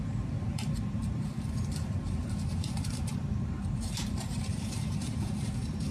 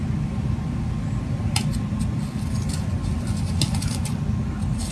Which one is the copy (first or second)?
first